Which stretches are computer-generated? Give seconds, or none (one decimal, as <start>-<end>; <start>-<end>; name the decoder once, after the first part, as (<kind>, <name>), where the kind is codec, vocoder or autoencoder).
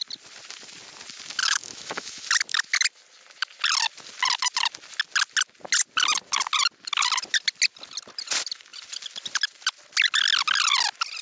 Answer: 1.4-2.3 (autoencoder, DAC-VAE)